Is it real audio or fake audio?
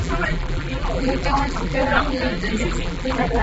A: fake